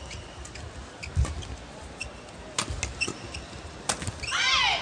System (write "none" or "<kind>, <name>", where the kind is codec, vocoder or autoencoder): none